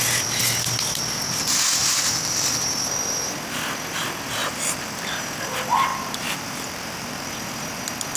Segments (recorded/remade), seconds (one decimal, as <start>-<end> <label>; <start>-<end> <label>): 0.0-1.8 recorded; 1.8-2.5 remade; 2.5-4.4 recorded; 4.4-5.2 remade; 5.2-5.9 recorded; 5.9-7.3 remade; 7.3-8.2 recorded

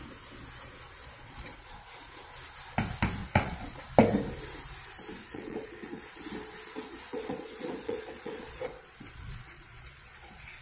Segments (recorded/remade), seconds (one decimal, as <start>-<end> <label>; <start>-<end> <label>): 0.0-1.0 recorded; 1.0-2.2 remade; 2.2-3.2 recorded; 3.2-3.8 remade; 3.8-5.2 recorded; 5.2-6.2 remade; 6.2-7.1 recorded; 7.1-10.6 remade

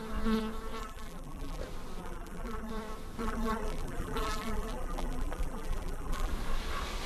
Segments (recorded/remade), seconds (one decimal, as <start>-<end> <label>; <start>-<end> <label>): 0.0-0.8 recorded; 0.8-1.6 remade; 1.6-2.0 recorded; 2.0-2.7 remade; 2.7-3.2 recorded; 3.2-6.3 remade; 6.3-7.1 recorded

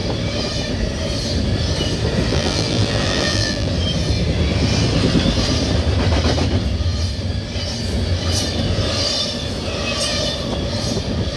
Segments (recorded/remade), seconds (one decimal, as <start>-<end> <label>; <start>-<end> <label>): 0.0-2.3 recorded; 2.3-3.7 remade; 3.7-11.4 recorded